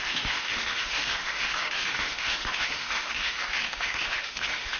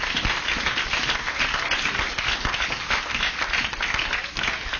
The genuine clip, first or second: second